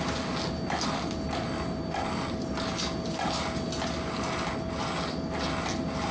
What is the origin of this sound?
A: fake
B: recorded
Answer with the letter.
B